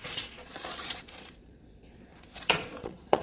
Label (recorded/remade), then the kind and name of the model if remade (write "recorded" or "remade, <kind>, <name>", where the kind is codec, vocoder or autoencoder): remade, vocoder, Vocos